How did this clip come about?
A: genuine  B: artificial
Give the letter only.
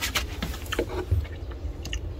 A